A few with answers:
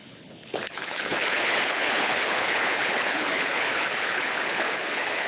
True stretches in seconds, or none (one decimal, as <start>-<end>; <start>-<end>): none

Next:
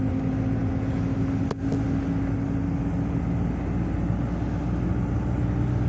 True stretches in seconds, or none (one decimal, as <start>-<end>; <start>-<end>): 0.0-5.9

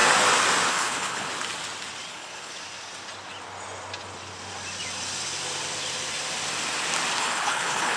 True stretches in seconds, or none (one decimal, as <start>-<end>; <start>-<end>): 0.0-0.7; 1.3-2.1; 2.5-7.2

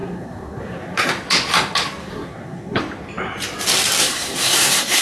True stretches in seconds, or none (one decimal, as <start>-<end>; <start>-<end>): 1.1-2.0; 2.8-4.0

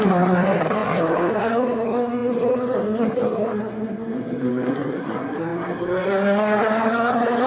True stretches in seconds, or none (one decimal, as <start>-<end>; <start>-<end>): none